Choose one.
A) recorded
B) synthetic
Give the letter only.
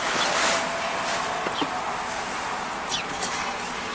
A